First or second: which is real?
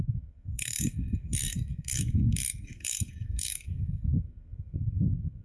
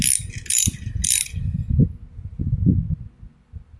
second